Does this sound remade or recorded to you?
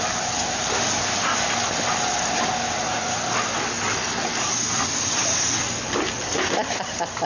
recorded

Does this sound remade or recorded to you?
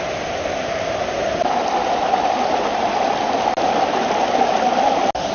recorded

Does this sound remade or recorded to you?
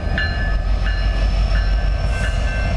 recorded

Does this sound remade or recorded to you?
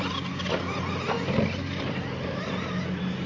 recorded